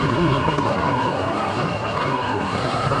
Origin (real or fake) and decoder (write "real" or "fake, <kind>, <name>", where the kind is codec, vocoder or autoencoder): fake, codec, SNAC